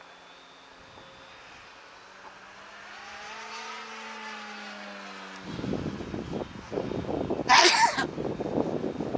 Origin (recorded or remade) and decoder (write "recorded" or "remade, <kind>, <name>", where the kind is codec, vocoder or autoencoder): recorded